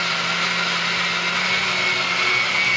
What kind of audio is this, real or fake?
real